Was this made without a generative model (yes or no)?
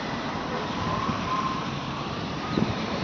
no